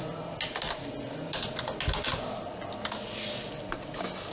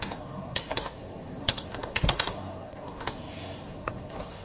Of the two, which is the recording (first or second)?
first